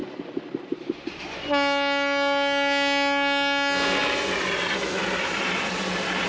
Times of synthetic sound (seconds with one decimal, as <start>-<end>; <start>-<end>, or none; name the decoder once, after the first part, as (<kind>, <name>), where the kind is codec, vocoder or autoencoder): 0.0-1.3 (vocoder, BigVGAN v2); 4.0-6.3